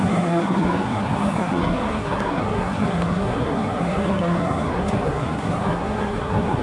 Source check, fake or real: fake